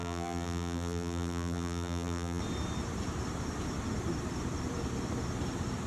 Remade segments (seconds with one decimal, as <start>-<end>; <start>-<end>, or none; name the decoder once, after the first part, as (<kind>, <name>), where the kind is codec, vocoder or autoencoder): 0.0-2.4 (vocoder, BigVGAN v2)